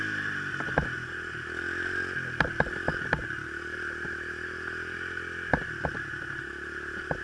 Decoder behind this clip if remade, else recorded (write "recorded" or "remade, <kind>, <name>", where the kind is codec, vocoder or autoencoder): recorded